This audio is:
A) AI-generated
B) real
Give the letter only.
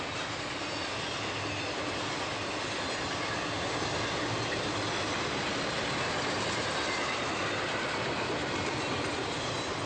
B